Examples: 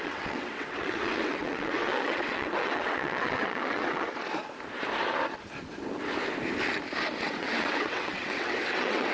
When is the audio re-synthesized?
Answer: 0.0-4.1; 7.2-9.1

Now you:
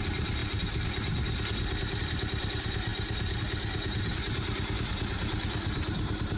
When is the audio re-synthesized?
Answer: 0.0-0.4; 2.0-2.9; 4.2-6.4

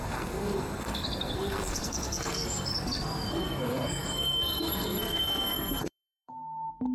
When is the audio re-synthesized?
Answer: 0.0-6.9